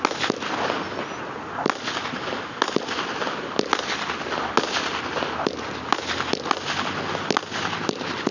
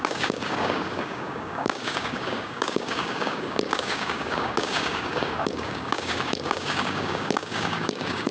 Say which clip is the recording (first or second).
first